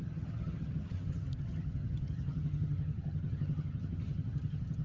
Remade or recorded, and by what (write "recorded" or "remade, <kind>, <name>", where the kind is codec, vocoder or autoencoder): remade, vocoder, HiFi-GAN